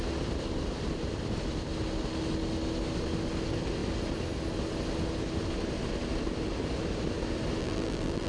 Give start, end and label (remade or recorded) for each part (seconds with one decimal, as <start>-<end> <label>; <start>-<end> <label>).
0.0-7.6 recorded; 7.6-8.3 remade